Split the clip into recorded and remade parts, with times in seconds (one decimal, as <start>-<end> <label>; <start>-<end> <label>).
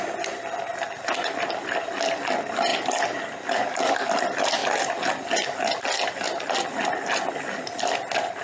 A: 0.0-0.7 remade; 0.7-1.6 recorded; 1.6-2.7 remade; 2.7-3.5 recorded; 3.5-4.6 remade; 4.6-7.3 recorded; 7.3-8.4 remade